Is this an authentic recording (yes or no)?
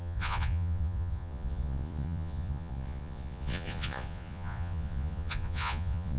no